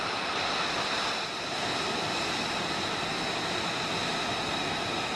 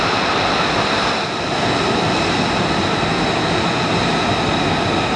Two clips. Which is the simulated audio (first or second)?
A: first